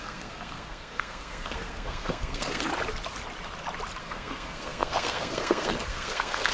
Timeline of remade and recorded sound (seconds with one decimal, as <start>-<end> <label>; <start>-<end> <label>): 0.0-2.7 remade; 2.7-4.0 recorded; 4.0-6.5 remade